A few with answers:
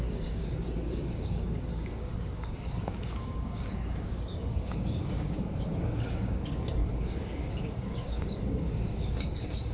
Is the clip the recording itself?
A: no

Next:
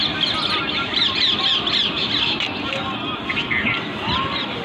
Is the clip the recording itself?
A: yes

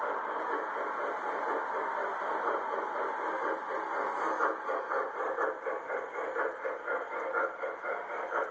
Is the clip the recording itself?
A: yes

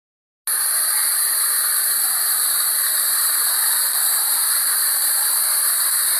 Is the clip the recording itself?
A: yes